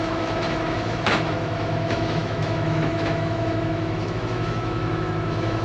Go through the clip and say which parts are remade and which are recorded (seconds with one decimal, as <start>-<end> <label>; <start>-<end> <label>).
0.0-5.6 remade